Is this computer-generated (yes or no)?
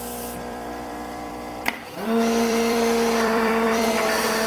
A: yes